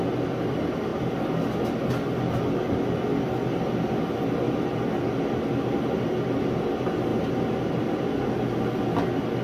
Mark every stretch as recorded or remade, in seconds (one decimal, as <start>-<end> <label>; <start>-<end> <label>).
0.0-7.1 recorded; 7.1-7.8 remade; 7.8-9.4 recorded